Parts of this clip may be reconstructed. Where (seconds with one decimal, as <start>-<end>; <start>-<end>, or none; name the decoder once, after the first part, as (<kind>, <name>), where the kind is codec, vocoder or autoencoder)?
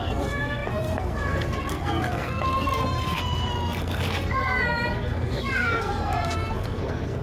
0.0-7.2 (codec, SNAC)